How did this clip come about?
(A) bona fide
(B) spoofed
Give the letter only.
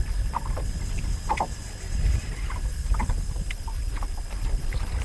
A